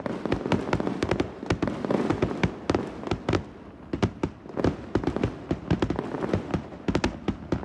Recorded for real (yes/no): yes